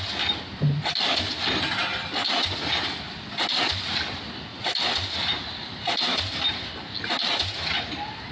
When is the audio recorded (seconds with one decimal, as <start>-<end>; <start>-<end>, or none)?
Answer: 0.0-8.3